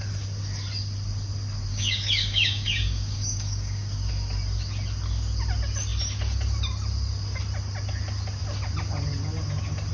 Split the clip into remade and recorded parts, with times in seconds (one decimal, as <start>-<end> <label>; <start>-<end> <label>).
0.0-1.7 recorded; 1.7-4.1 remade; 4.1-9.9 recorded